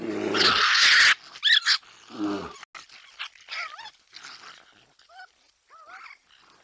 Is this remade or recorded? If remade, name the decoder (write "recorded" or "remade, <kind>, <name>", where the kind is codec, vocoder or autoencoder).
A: recorded